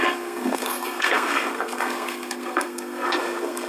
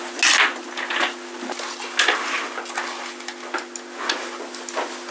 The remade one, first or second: first